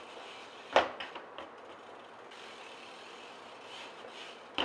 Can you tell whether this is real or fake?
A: real